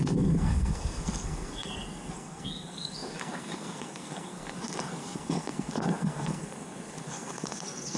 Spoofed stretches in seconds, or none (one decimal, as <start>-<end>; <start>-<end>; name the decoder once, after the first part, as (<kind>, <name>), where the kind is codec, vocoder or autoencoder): 0.0-8.0 (codec, SNAC)